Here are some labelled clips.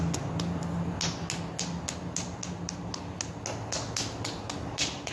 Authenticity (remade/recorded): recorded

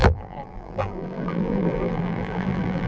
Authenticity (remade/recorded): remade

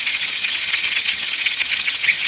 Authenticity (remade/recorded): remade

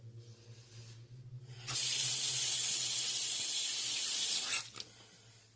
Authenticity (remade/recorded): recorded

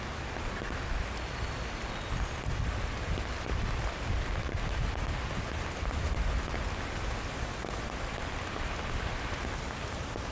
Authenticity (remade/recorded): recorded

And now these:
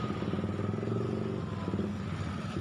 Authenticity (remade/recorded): recorded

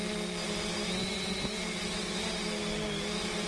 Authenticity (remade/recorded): recorded